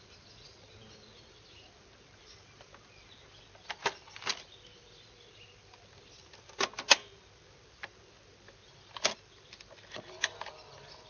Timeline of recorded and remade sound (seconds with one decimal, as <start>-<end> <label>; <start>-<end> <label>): 0.0-11.1 recorded